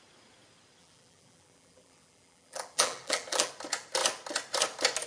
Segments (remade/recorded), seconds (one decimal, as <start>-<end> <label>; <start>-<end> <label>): 0.0-0.8 recorded; 0.8-3.5 remade; 3.5-5.1 recorded

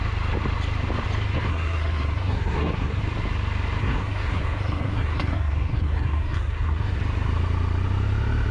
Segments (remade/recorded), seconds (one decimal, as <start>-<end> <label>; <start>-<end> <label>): 0.0-1.5 recorded; 1.5-3.0 remade; 3.0-3.8 recorded; 3.8-7.0 remade; 7.0-8.5 recorded

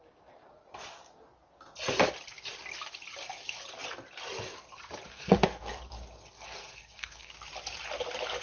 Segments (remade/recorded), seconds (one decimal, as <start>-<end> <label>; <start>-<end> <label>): 0.0-5.1 recorded; 5.1-5.6 remade; 5.6-6.6 recorded; 6.6-7.3 remade; 7.3-8.4 recorded

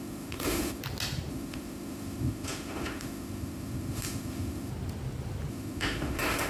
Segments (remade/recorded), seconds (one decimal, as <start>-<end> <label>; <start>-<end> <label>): 0.0-0.8 remade; 0.8-1.3 recorded; 1.3-4.7 remade; 4.7-5.5 recorded; 5.5-6.5 remade

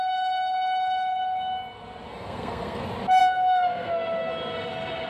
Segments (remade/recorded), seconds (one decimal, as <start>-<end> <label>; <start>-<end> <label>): 0.0-2.1 recorded; 2.1-2.8 remade; 2.8-3.2 recorded; 3.2-3.9 remade; 3.9-5.1 recorded

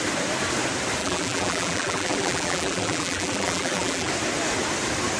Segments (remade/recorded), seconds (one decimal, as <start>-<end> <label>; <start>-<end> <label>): 0.0-1.0 recorded; 1.0-4.1 remade; 4.1-5.2 recorded